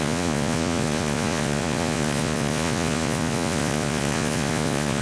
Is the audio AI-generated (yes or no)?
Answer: yes